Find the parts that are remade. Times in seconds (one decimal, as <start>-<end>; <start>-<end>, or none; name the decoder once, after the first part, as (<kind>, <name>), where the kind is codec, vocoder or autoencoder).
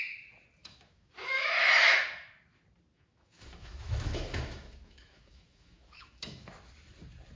0.6-2.0 (autoencoder, DAC-VAE); 2.9-6.5